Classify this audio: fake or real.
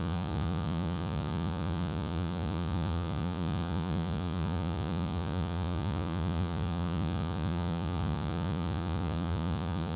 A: fake